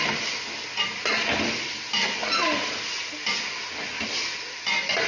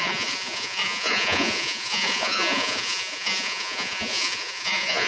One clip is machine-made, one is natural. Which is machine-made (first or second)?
second